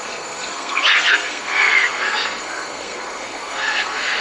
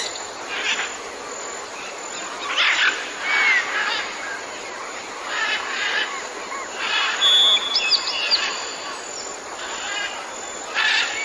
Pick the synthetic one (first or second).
first